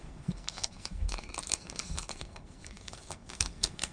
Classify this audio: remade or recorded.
remade